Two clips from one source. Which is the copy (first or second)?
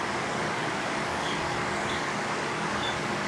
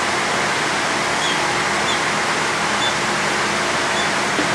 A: first